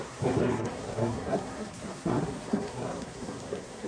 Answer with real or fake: fake